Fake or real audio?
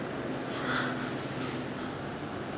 real